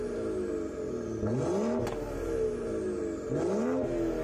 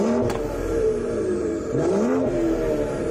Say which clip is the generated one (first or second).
second